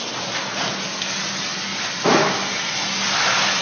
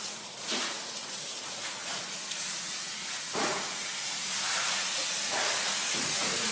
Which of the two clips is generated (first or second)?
second